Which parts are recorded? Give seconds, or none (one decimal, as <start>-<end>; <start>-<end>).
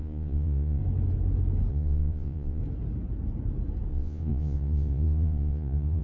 0.8-1.7; 2.6-3.9